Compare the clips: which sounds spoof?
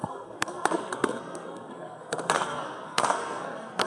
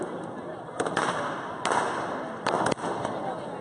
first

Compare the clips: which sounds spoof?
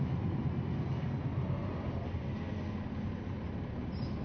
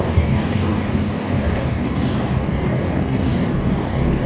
second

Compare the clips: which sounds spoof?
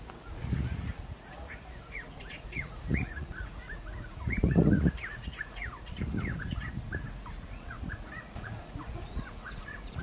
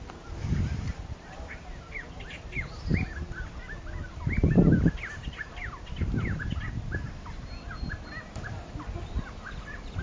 first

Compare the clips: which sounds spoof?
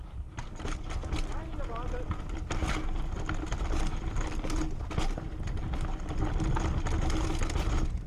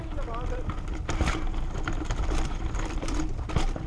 second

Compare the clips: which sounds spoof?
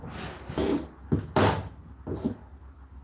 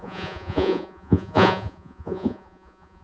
second